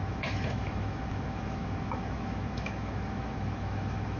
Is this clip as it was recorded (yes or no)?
no